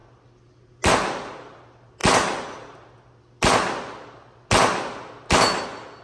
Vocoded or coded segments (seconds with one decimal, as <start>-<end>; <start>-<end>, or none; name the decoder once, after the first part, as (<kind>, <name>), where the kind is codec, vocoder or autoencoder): none